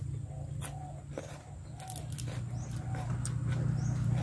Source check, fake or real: real